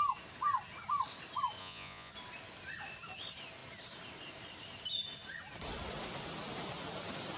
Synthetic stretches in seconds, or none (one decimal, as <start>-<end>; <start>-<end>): 1.6-2.1